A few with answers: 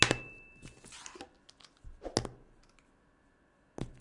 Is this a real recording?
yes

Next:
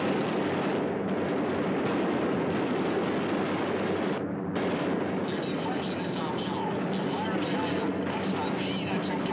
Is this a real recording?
yes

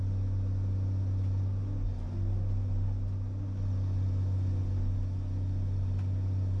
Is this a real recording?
yes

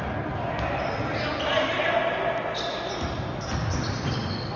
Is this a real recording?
yes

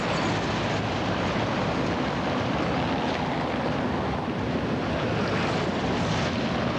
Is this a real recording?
yes